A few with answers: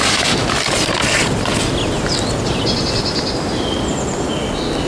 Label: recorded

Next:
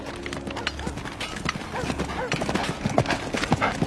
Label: recorded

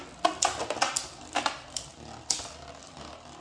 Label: recorded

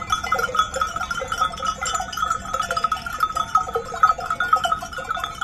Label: recorded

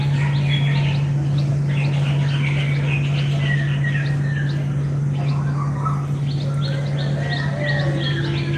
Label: recorded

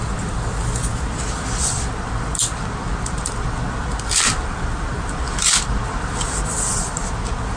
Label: remade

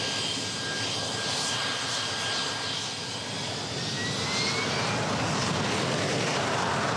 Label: recorded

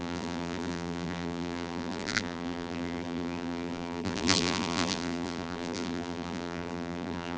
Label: remade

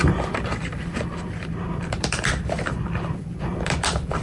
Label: remade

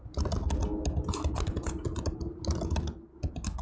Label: recorded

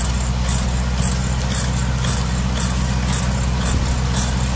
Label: recorded